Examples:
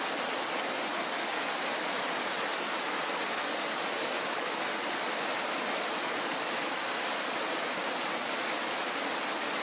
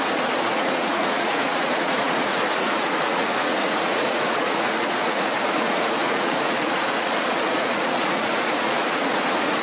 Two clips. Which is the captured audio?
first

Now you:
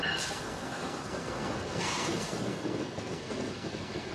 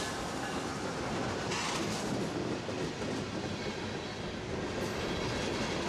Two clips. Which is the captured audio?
second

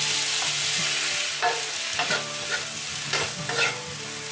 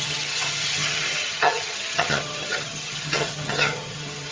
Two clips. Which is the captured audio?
first